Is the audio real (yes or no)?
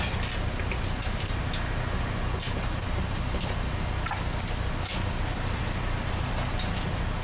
yes